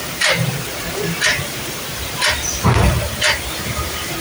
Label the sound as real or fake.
fake